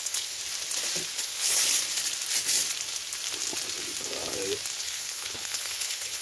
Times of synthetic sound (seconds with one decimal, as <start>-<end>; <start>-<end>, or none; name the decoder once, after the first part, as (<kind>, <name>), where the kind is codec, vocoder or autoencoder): 0.0-0.4 (codec, HILCodec); 1.2-1.6; 4.8-6.2